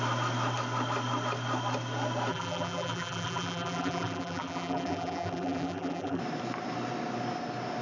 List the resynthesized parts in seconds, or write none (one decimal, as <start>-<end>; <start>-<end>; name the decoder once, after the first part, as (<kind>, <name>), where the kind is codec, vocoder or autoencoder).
2.3-6.2 (vocoder, BigVGAN v2)